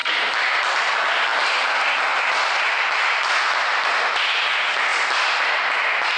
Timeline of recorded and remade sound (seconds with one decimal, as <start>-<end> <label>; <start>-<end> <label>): 0.0-6.2 recorded